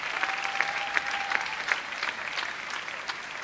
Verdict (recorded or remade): remade